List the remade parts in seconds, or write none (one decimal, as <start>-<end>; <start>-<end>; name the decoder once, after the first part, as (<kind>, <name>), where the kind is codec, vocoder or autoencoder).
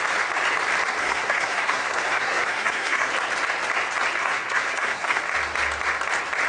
1.0-3.1 (codec, SNAC); 4.2-5.2